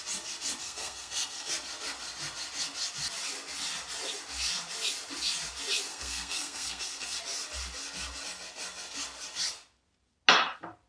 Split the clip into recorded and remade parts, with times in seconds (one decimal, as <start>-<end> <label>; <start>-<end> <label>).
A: 0.0-0.6 recorded; 0.6-1.5 remade; 1.5-5.9 recorded; 5.9-7.2 remade; 7.2-10.9 recorded